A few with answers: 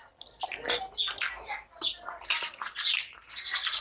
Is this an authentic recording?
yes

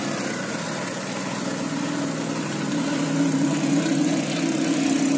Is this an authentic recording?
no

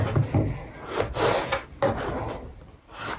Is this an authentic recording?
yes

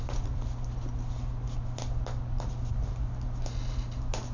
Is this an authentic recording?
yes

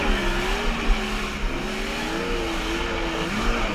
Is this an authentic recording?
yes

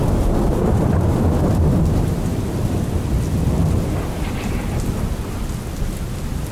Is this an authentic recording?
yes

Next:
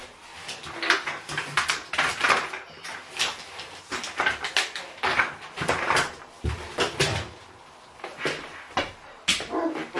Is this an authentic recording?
yes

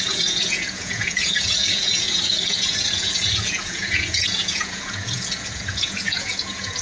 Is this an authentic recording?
no